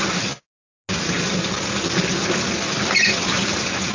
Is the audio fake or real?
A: real